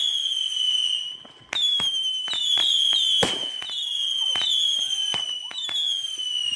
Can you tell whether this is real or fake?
real